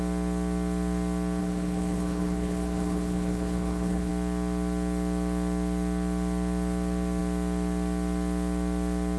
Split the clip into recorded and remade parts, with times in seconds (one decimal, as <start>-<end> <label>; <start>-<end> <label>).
0.0-1.4 recorded; 1.4-4.1 remade; 4.1-9.2 recorded